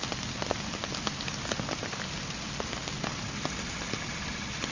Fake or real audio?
real